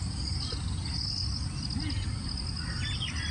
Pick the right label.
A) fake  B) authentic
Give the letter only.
B